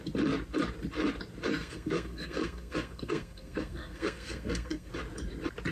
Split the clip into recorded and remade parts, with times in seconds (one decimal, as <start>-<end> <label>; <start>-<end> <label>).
0.0-1.5 recorded; 1.5-4.9 remade; 4.9-5.7 recorded